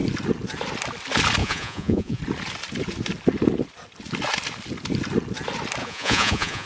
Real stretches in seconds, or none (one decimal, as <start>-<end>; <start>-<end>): 0.0-1.4; 2.2-5.8